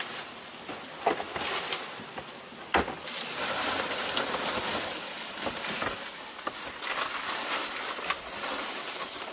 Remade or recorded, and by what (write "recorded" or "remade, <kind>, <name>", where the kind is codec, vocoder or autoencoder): recorded